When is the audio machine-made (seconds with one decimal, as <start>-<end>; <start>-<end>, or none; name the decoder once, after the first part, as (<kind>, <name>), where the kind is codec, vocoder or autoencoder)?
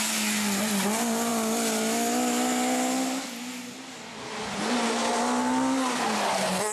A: none